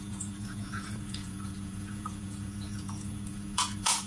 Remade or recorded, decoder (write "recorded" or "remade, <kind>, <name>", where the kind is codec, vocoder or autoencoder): remade, vocoder, Vocos